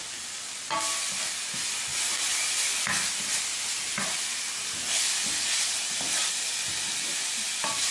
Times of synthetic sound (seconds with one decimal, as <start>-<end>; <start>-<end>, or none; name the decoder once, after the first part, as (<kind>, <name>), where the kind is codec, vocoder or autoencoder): none